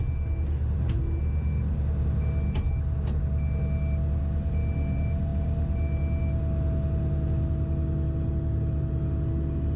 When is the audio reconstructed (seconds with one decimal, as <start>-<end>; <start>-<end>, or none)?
none